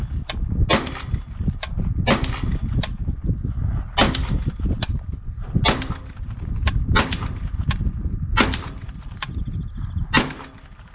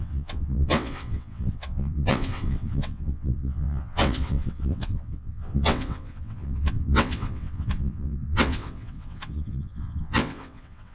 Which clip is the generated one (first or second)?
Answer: second